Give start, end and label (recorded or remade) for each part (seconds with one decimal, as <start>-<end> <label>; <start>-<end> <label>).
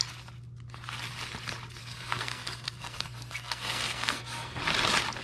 0.0-1.8 recorded; 1.8-4.6 remade; 4.6-5.2 recorded